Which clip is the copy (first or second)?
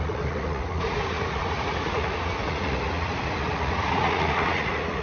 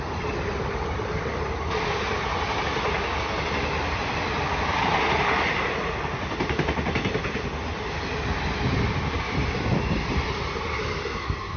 first